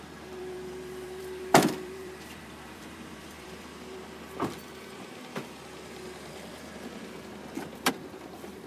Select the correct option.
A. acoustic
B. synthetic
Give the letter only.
B